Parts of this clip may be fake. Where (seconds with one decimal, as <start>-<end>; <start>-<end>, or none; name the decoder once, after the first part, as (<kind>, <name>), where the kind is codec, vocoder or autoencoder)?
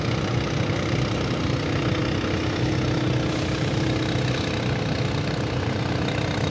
none